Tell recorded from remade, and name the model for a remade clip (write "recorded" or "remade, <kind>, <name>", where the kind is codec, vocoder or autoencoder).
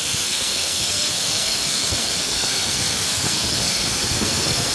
remade, codec, SNAC